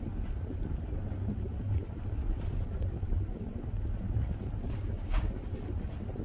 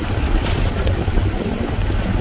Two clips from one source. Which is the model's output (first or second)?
second